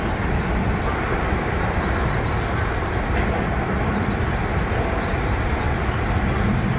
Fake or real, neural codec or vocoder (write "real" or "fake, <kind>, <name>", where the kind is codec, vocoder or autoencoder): real